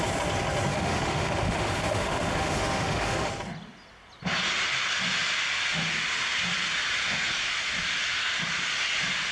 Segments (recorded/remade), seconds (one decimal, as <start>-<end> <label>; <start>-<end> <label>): 0.0-0.7 recorded; 0.7-3.3 remade; 3.3-9.3 recorded